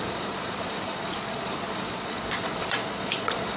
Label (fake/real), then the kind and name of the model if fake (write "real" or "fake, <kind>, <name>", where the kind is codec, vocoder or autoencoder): fake, vocoder, Vocos